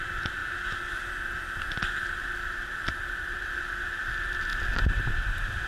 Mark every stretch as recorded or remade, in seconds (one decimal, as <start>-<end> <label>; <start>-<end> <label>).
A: 0.0-5.7 recorded